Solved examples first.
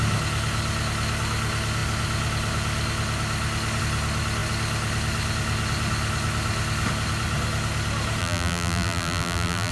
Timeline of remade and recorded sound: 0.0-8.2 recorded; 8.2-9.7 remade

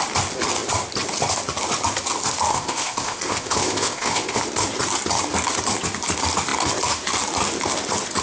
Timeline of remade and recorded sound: 0.0-2.5 recorded; 2.5-4.4 remade; 4.4-8.2 recorded

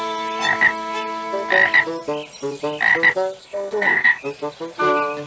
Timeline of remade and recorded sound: 0.0-3.4 recorded; 3.4-4.2 remade; 4.2-5.3 recorded

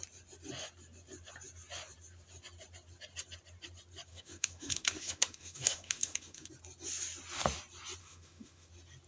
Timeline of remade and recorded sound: 0.0-4.1 recorded; 4.1-6.5 remade; 6.5-8.0 recorded; 8.0-8.7 remade; 8.7-9.1 recorded

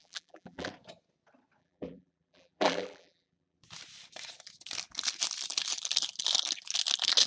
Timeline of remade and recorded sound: 0.0-0.7 remade; 0.7-1.6 recorded; 1.6-3.6 remade; 3.6-7.3 recorded

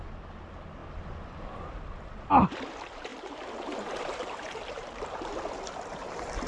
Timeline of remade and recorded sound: 0.0-3.1 recorded; 3.1-5.3 remade; 5.3-6.5 recorded

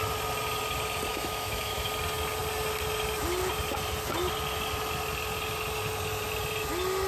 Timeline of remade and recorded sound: 0.0-1.1 recorded; 1.1-1.9 remade; 1.9-7.1 recorded